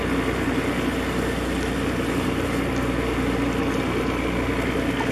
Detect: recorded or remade recorded